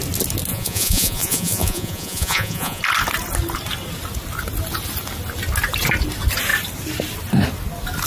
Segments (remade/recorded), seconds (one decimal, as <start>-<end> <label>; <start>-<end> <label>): 0.0-0.5 recorded; 0.5-2.8 remade; 2.8-8.1 recorded